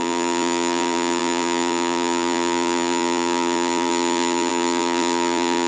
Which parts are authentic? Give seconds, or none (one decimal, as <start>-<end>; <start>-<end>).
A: none